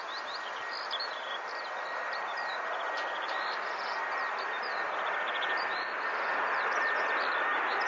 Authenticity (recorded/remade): recorded